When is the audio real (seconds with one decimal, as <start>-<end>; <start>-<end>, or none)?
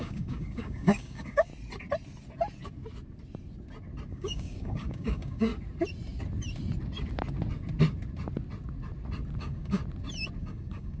1.5-4.1; 5.5-9.4; 9.8-10.4